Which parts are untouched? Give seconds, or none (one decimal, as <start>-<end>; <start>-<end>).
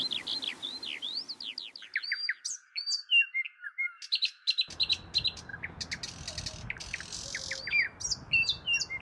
0.0-9.0